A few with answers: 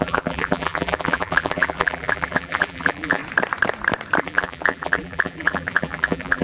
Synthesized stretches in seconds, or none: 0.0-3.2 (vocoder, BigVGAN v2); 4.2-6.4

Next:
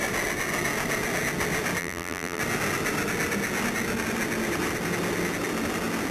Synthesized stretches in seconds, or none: 1.8-2.4 (vocoder, BigVGAN v2)

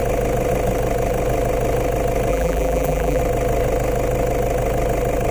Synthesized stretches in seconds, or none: 2.3-3.2 (vocoder, BigVGAN v2)